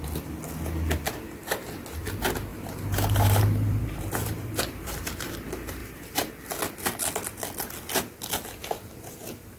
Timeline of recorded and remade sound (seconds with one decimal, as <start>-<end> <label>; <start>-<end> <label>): 0.0-2.5 recorded; 2.5-5.3 remade; 5.3-5.8 recorded; 5.8-6.3 remade; 6.3-8.6 recorded; 8.6-9.1 remade; 9.1-9.6 recorded